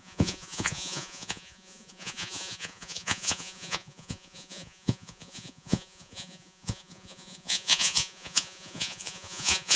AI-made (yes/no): yes